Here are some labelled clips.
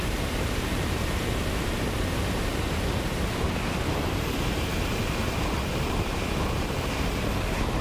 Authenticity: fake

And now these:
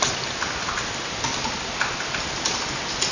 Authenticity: real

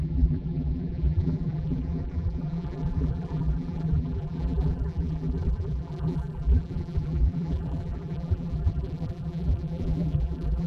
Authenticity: fake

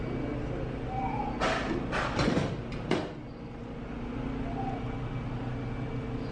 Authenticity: real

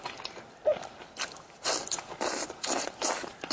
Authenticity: fake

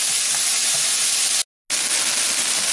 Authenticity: real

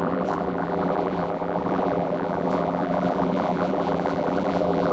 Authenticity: fake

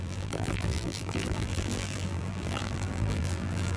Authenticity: fake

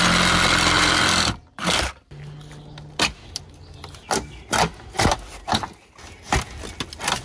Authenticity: real